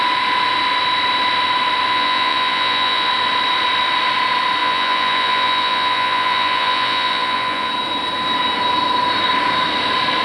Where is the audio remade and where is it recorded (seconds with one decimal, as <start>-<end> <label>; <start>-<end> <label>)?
0.0-1.9 recorded; 1.9-3.1 remade; 3.1-4.6 recorded; 4.6-7.7 remade; 7.7-10.2 recorded